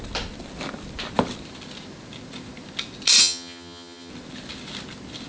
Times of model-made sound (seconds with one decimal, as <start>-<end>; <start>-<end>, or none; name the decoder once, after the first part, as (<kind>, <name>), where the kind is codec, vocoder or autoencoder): 3.2-4.1 (vocoder, HiFi-GAN)